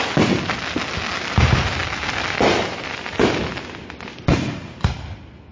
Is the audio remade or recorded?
recorded